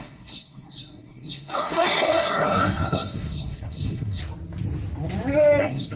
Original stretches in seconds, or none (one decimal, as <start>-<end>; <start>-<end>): 4.2-5.6